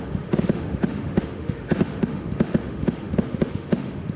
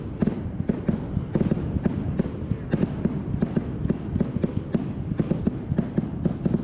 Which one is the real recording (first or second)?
second